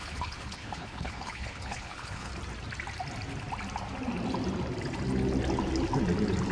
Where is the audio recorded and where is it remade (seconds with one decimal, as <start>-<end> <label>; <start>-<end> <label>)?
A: 0.0-2.3 remade; 2.3-6.5 recorded